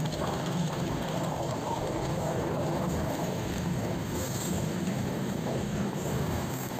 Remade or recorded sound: remade